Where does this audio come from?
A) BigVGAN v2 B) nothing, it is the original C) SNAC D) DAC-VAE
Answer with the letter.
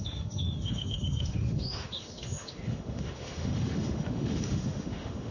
D